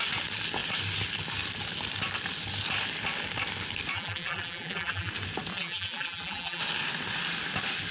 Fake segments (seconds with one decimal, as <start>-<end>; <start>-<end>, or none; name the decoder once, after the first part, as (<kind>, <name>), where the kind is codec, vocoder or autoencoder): 3.9-5.1 (vocoder, BigVGAN v2); 5.5-6.6